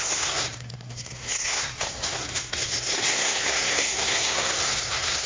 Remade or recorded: remade